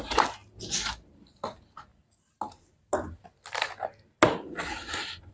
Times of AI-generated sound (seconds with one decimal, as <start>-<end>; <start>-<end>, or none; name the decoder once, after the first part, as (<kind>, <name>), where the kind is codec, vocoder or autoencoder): none